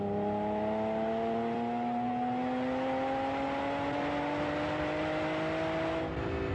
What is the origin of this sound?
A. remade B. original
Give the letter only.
B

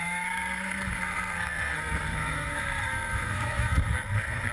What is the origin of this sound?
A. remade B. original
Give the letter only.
A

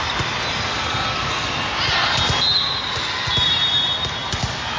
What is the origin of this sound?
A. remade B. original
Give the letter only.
B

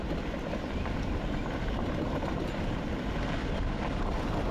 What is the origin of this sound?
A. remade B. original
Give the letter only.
B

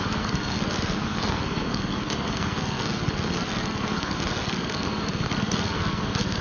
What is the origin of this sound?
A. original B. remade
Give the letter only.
B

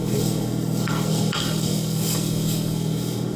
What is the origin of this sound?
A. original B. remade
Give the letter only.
B